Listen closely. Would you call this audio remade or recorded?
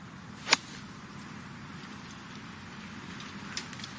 recorded